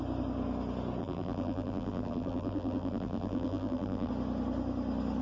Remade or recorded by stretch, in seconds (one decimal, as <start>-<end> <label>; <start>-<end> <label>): 0.0-1.0 recorded; 1.0-4.1 remade; 4.1-5.2 recorded